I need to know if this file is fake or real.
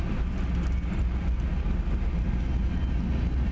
real